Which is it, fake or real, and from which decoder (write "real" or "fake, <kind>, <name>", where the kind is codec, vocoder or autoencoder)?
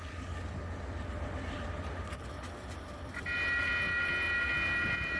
real